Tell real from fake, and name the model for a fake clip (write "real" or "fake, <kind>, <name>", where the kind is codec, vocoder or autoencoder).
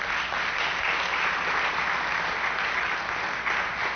real